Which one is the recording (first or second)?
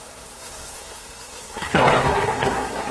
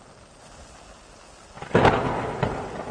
second